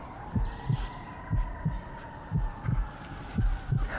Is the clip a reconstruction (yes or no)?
no